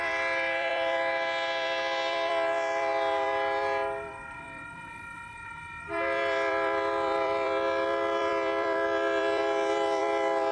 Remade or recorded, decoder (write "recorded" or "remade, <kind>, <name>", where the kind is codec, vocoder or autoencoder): remade, vocoder, BigVGAN v2